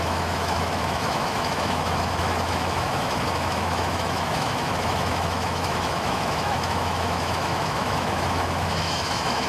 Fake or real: fake